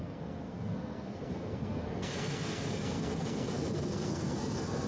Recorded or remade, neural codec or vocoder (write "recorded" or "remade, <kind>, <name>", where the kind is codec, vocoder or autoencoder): remade, codec, SNAC